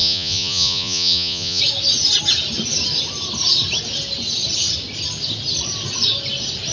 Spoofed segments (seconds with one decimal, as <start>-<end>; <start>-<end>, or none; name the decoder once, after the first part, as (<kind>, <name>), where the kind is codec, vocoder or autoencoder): 0.0-1.6 (vocoder, Vocos)